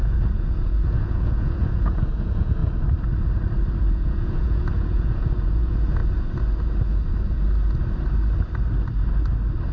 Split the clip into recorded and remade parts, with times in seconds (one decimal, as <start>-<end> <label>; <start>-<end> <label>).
0.0-2.6 remade; 2.6-3.9 recorded; 3.9-6.0 remade; 6.0-9.7 recorded